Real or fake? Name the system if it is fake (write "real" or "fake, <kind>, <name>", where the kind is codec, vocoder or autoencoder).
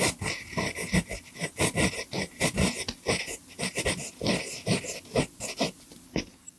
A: real